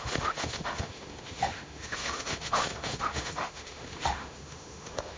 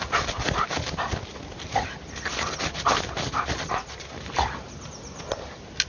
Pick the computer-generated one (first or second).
first